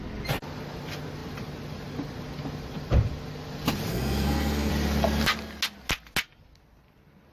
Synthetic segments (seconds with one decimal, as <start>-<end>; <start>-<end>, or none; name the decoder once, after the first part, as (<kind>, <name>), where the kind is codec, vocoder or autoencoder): 3.9-4.7 (codec, SNAC)